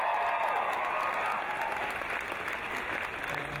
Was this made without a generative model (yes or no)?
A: yes